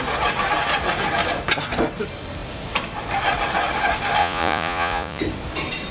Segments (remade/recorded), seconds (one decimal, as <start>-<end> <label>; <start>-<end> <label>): 0.0-4.2 recorded; 4.2-5.2 remade; 5.2-5.9 recorded